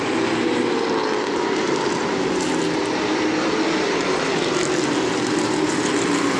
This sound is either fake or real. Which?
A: real